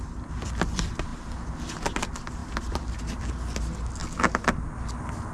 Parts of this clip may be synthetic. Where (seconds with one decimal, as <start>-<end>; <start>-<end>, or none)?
2.4-3.0